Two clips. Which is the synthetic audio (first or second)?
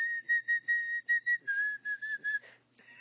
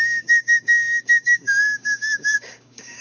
second